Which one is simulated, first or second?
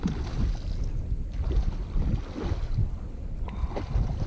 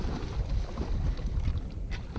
second